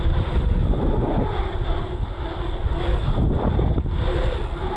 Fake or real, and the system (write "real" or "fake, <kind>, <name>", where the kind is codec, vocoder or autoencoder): real